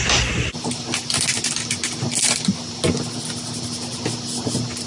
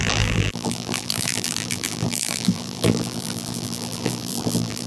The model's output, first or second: second